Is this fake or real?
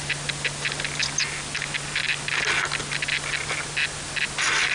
real